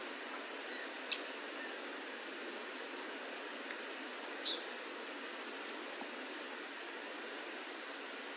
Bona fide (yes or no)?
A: yes